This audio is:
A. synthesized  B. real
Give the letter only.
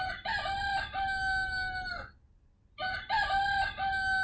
B